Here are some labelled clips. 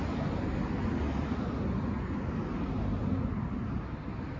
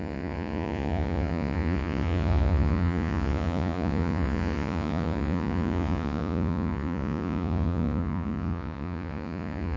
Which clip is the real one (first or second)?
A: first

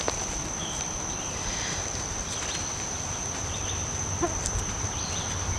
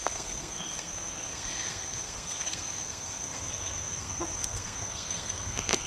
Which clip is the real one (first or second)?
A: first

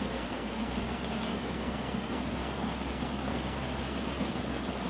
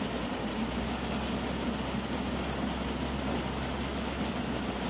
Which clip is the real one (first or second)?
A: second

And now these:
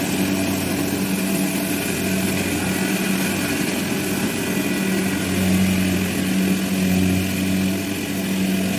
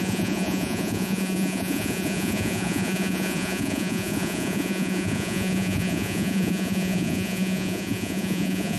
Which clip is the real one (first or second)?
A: first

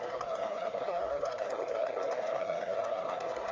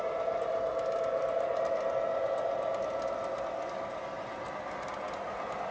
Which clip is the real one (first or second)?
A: second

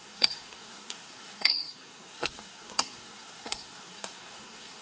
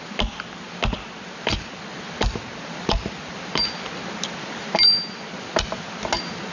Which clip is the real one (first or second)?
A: second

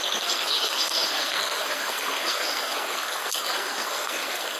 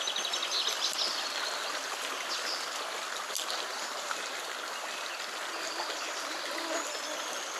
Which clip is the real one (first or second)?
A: second